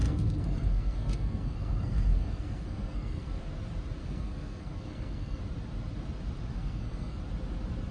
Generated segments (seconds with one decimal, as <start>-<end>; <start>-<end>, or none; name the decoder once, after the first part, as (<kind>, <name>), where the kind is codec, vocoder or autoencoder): 0.0-3.4 (codec, SNAC); 4.0-5.4; 6.5-7.2